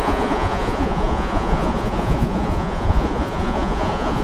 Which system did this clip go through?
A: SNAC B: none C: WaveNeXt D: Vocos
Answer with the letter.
D